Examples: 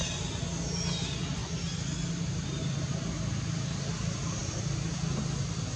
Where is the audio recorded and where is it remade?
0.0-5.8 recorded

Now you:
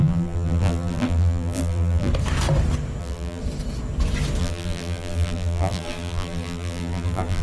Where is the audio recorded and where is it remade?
0.0-2.1 remade; 2.1-3.0 recorded; 3.0-3.4 remade; 3.4-4.4 recorded; 4.4-7.4 remade

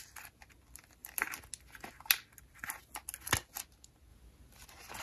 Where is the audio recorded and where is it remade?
0.0-5.0 recorded

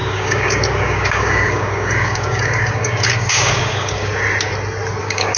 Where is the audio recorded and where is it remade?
0.0-4.1 remade; 4.1-5.0 recorded; 5.0-5.4 remade

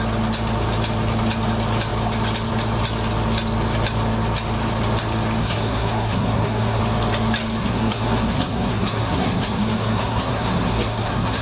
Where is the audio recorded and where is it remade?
0.0-5.4 recorded; 5.4-6.8 remade; 6.8-7.6 recorded; 7.6-11.4 remade